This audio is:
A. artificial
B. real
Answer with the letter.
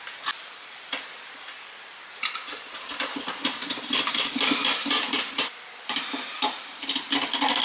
A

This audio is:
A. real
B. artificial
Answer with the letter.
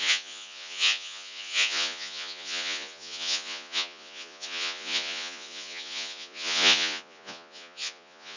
B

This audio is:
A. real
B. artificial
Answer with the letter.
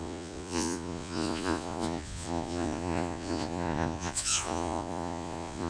B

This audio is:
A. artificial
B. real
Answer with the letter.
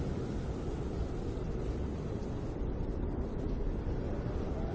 B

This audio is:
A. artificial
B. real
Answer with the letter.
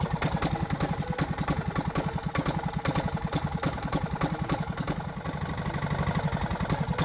B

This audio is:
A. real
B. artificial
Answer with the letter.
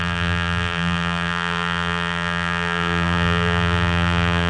B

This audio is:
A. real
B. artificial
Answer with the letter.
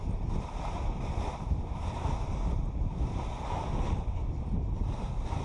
A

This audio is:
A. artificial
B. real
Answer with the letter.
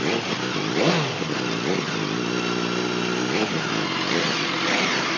B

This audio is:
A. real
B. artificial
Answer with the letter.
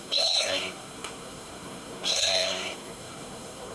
B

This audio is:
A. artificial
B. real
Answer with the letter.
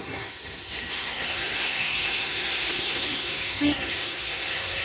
A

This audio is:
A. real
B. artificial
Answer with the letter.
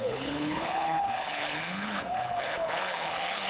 B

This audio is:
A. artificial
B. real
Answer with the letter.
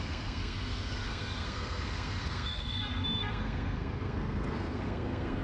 A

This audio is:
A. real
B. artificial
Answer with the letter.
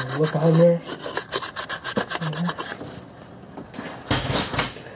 A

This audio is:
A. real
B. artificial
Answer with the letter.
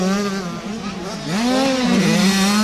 A